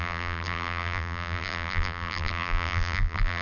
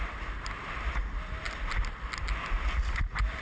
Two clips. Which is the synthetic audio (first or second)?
first